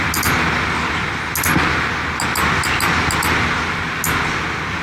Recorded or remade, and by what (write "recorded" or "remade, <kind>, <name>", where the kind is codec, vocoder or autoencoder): recorded